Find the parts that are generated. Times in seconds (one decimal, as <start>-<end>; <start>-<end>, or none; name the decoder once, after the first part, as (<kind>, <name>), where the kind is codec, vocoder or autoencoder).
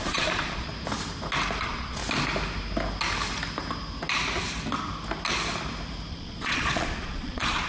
0.0-0.7 (vocoder, Vocos); 1.6-2.0; 6.1-7.7